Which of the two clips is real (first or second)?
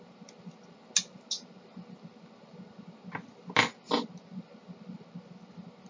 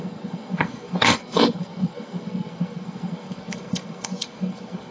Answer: first